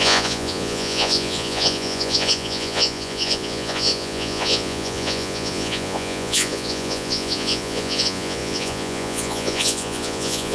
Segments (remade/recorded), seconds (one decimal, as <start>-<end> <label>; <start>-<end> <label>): 0.0-10.5 remade